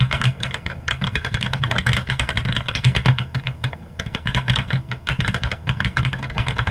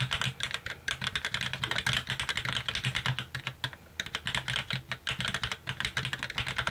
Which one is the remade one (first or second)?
first